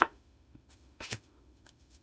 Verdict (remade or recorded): remade